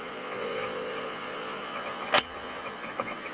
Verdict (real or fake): fake